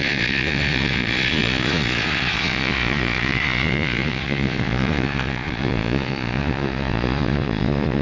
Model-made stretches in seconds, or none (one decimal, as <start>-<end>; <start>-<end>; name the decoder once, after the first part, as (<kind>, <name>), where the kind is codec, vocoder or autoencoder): 0.0-8.0 (vocoder, Vocos)

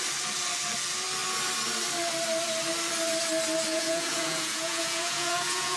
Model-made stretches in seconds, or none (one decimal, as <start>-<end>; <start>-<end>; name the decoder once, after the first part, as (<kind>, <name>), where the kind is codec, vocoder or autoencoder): 3.7-5.8 (vocoder, Vocos)

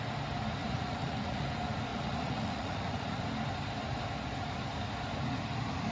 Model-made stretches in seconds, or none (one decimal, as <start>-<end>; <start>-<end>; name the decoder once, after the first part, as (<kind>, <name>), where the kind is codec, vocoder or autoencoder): 0.6-1.5 (vocoder, Vocos); 1.9-3.2